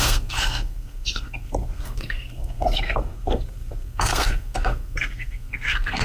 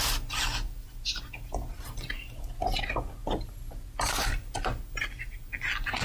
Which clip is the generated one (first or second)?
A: first